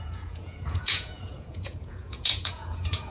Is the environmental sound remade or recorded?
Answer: remade